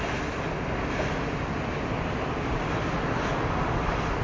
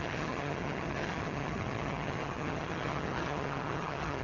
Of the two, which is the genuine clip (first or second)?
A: first